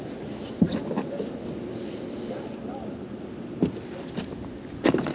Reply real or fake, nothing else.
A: real